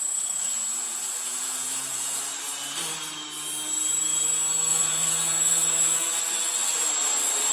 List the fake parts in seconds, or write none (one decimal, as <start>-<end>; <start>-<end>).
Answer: 0.8-2.2; 4.7-6.2